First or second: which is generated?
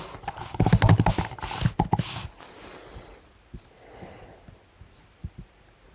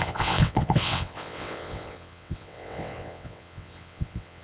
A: second